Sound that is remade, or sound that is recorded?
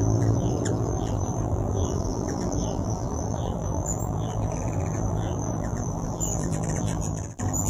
remade